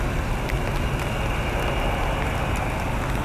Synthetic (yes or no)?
no